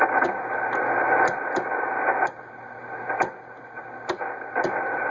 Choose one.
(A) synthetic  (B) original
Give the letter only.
B